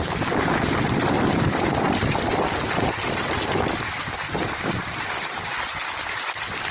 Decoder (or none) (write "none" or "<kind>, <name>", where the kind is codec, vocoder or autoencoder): none